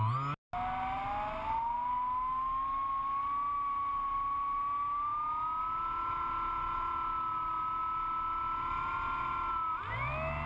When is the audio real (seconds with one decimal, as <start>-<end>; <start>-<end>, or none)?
0.0-10.5